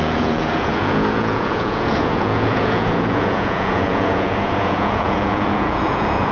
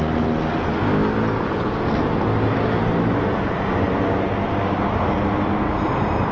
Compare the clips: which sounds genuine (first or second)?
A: second